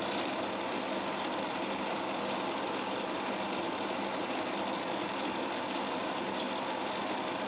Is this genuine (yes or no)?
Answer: yes